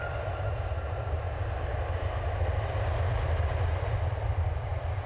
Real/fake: real